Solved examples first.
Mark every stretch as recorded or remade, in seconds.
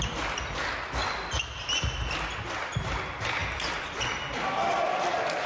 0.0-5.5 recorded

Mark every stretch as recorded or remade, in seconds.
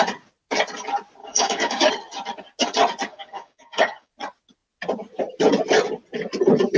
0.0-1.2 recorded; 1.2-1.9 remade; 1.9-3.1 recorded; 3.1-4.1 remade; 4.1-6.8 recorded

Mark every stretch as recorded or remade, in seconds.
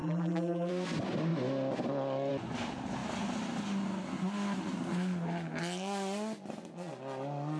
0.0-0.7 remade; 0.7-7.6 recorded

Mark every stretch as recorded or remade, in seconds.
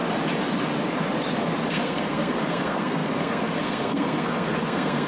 0.0-1.7 recorded; 1.7-5.1 remade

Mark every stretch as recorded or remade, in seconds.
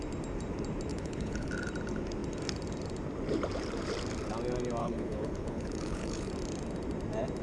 0.0-0.9 recorded; 0.9-1.5 remade; 1.5-4.8 recorded; 4.8-6.3 remade; 6.3-7.4 recorded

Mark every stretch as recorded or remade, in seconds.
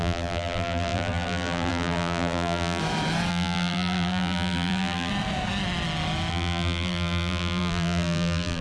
0.0-2.8 remade; 2.8-3.3 recorded; 3.3-5.1 remade; 5.1-6.3 recorded; 6.3-8.6 remade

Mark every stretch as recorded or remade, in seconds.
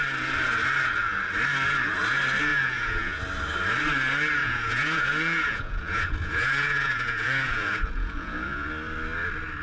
0.0-2.5 recorded; 2.5-3.2 remade; 3.2-4.4 recorded; 4.4-8.7 remade; 8.7-9.6 recorded